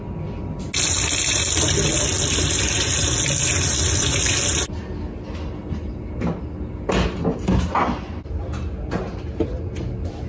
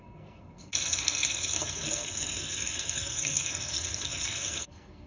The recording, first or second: first